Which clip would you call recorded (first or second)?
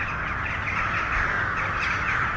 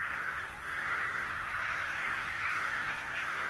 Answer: first